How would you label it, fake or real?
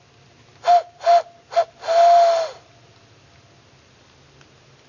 real